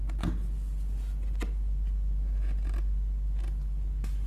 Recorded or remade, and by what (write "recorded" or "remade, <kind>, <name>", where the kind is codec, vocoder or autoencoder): recorded